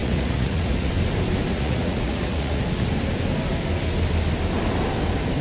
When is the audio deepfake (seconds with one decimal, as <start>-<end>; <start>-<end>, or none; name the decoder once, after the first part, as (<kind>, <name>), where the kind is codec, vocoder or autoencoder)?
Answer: 0.0-0.9 (vocoder, Vocos); 1.5-2.9